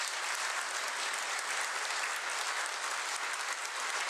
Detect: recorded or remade recorded